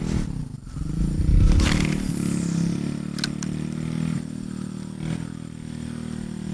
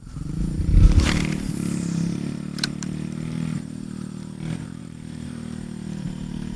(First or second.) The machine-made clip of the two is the second